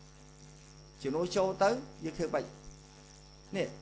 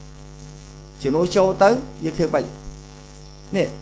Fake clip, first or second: second